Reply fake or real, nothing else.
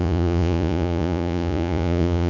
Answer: fake